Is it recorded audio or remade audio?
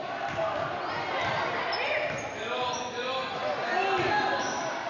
recorded